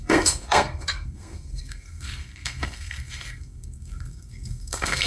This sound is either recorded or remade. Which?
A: remade